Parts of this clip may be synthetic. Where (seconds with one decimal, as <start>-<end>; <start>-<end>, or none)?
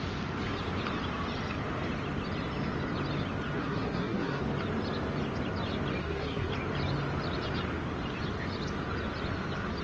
3.6-4.4; 6.0-6.5